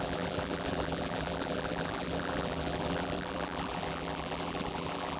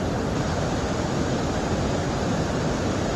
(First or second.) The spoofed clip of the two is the first